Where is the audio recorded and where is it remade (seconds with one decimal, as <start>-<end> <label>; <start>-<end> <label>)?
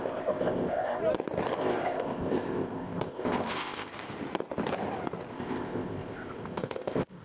0.0-1.0 remade; 1.0-1.6 recorded; 1.6-3.9 remade; 3.9-5.3 recorded; 5.3-7.2 remade